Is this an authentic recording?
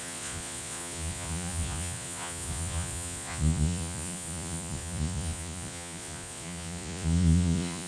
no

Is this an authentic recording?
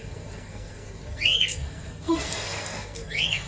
no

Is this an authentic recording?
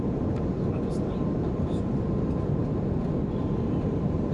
yes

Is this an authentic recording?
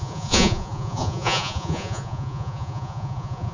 no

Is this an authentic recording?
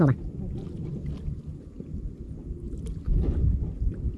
yes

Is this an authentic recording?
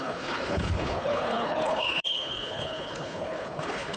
no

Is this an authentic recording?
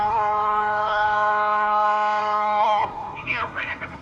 no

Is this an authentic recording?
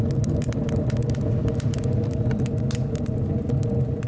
yes